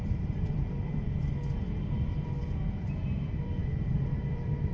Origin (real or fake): fake